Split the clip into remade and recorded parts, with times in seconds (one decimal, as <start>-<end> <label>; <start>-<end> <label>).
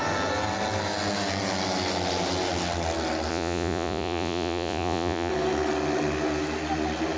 0.0-3.3 recorded; 3.3-5.3 remade; 5.3-7.2 recorded